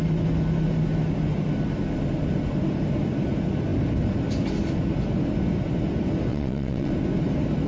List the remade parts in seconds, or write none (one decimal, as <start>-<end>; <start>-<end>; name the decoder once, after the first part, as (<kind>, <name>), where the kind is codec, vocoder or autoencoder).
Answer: 6.3-6.9 (vocoder, WaveNeXt)

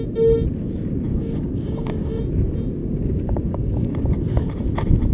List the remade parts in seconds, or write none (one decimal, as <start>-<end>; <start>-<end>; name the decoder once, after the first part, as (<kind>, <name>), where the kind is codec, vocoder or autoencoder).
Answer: 1.1-2.2 (codec, DAC); 2.8-4.5

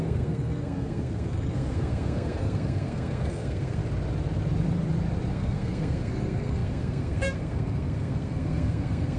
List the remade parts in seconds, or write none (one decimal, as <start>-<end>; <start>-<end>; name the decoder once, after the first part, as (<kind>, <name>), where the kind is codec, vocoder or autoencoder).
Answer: 0.0-3.8 (codec, SNAC); 5.3-9.2